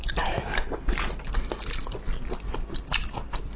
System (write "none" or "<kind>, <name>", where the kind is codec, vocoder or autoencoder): none